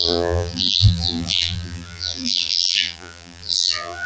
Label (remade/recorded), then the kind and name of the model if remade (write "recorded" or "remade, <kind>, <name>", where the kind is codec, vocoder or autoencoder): remade, vocoder, BigVGAN v2